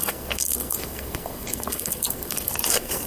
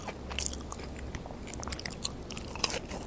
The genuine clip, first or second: second